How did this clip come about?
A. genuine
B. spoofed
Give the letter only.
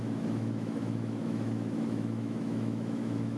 B